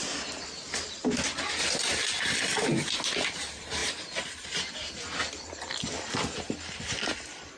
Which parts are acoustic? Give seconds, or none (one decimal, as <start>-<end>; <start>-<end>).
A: 0.0-7.6